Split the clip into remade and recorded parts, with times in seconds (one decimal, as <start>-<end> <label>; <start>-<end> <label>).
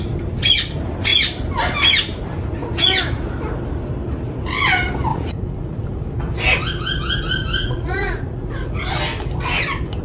0.0-5.1 recorded; 5.1-6.1 remade; 6.1-7.6 recorded; 7.6-8.9 remade; 8.9-10.0 recorded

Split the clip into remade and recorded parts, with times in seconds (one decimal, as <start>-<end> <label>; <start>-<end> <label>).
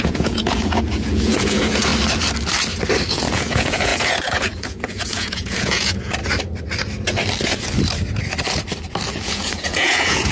0.0-1.9 remade; 1.9-3.1 recorded; 3.1-6.2 remade; 6.2-9.1 recorded; 9.1-10.3 remade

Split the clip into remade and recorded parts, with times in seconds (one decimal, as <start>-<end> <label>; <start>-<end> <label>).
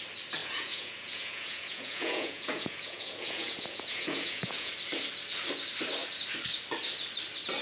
0.0-0.4 recorded; 0.4-4.7 remade; 4.7-7.6 recorded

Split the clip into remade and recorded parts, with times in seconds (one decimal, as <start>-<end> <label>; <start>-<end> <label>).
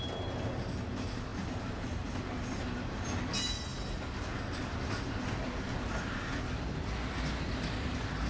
0.0-8.3 recorded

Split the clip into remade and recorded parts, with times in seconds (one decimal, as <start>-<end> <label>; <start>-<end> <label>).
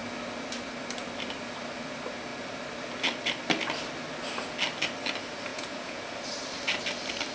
0.0-5.5 recorded; 5.5-6.0 remade; 6.0-7.3 recorded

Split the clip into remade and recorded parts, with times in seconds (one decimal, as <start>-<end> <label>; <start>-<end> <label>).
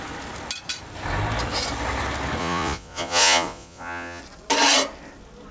0.0-2.4 recorded; 2.4-4.2 remade; 4.2-5.5 recorded